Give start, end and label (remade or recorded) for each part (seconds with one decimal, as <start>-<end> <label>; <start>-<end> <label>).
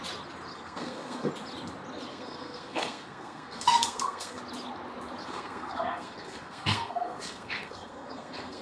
0.0-0.5 recorded; 0.5-1.3 remade; 1.3-2.1 recorded; 2.1-4.4 remade; 4.4-5.2 recorded; 5.2-8.6 remade